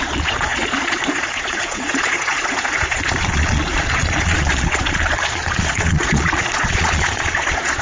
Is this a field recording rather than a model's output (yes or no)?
no